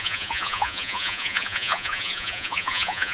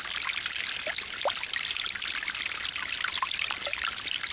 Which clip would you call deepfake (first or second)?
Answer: first